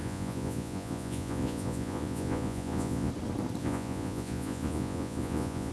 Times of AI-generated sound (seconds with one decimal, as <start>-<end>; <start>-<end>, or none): 0.0-3.1; 3.6-5.7